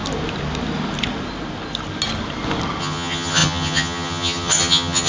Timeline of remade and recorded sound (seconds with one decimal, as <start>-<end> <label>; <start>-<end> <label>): 0.0-2.8 recorded; 2.8-5.1 remade